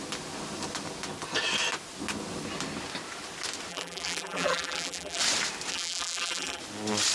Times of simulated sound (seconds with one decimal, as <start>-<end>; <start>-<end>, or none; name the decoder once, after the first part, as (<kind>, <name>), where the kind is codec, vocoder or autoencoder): 3.7-5.2 (vocoder, BigVGAN v2); 5.7-6.6